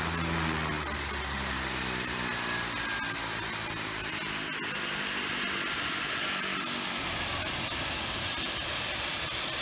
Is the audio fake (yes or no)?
no